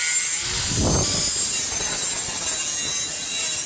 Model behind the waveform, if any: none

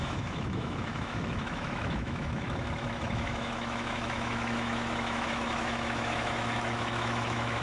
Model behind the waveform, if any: autoencoder, DAC-VAE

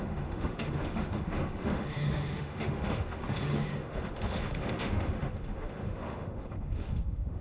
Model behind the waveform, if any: autoencoder, DAC-VAE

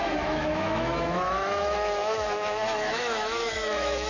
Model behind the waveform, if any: autoencoder, DAC-VAE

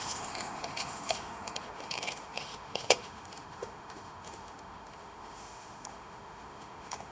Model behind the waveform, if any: autoencoder, DAC-VAE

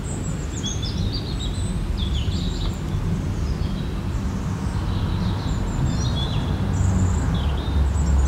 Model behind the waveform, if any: none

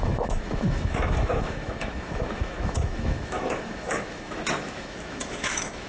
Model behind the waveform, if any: autoencoder, DAC-VAE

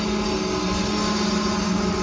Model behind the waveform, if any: none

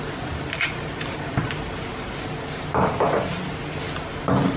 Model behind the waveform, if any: none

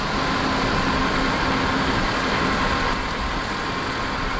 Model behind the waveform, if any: none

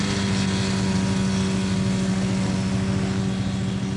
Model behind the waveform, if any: none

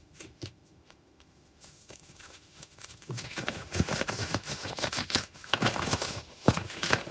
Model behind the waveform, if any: autoencoder, DAC-VAE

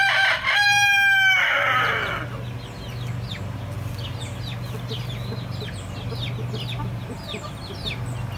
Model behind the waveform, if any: none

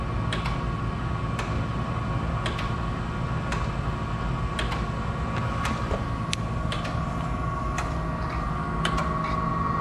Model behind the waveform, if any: none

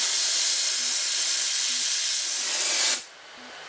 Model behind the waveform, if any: none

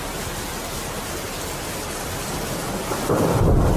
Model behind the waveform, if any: none